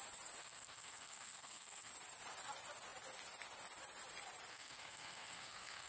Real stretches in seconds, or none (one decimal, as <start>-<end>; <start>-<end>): 0.0-0.4; 1.9-4.5

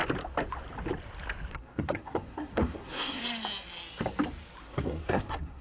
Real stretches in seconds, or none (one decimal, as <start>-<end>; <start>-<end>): 0.0-1.5; 3.2-4.6

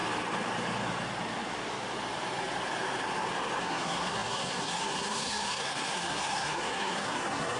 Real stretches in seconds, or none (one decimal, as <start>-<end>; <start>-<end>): 0.0-3.6

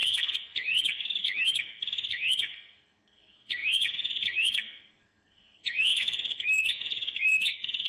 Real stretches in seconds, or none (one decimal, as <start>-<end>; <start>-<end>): none

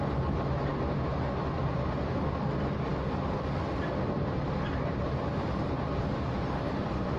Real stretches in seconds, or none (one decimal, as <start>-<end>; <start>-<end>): 0.0-7.2